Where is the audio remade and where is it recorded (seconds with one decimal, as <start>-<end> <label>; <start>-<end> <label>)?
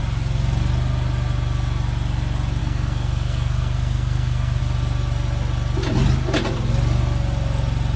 0.0-2.6 recorded; 2.6-4.6 remade; 4.6-8.0 recorded